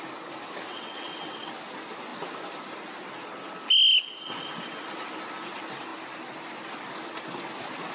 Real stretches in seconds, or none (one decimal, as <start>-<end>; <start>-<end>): 0.0-0.7; 1.5-7.9